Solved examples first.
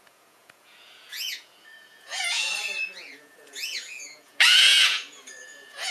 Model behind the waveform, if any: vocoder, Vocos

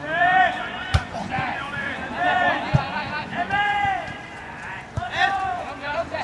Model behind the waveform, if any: vocoder, Vocos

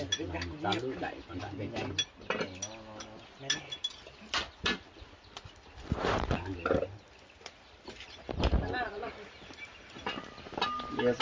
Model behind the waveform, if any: none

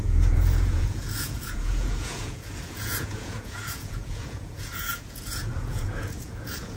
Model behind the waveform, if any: vocoder, Vocos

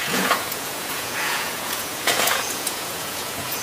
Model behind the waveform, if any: vocoder, Vocos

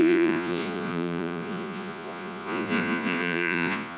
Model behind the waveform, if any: vocoder, Vocos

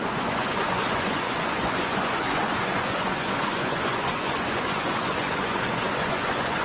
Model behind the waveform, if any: vocoder, Vocos